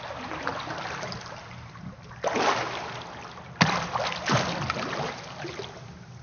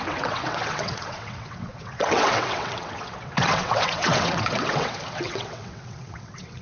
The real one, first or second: first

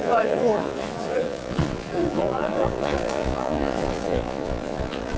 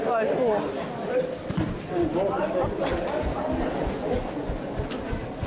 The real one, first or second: second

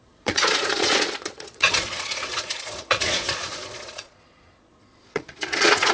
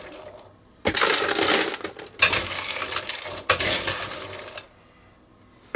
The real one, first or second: second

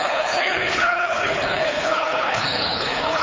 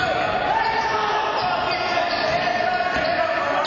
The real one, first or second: second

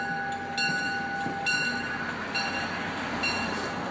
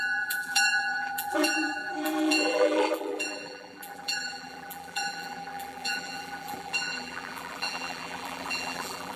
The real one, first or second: first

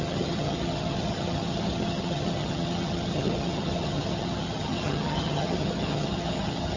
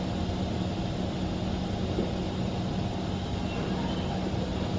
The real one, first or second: second